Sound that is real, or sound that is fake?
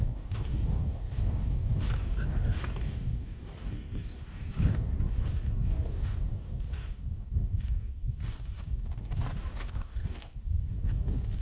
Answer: fake